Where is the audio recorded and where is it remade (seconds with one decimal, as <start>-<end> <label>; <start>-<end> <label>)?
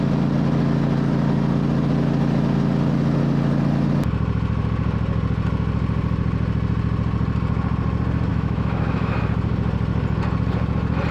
0.0-8.3 recorded; 8.3-9.2 remade; 9.2-11.1 recorded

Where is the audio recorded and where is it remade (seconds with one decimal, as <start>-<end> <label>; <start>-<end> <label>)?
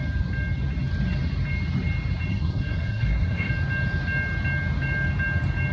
0.0-2.3 recorded; 2.3-3.5 remade; 3.5-5.7 recorded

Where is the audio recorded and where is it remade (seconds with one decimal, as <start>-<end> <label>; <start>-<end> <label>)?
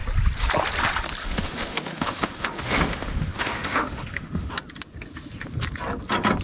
0.0-1.2 recorded; 1.2-4.5 remade; 4.5-6.4 recorded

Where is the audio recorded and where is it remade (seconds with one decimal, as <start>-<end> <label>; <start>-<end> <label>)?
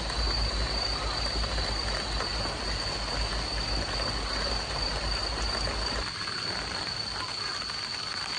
0.0-8.4 recorded